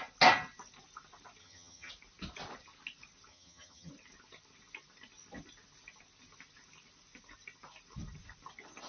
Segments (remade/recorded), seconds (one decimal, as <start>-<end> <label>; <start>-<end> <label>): 0.0-1.4 recorded; 1.4-1.9 remade; 1.9-3.3 recorded; 3.3-3.9 remade; 3.9-8.9 recorded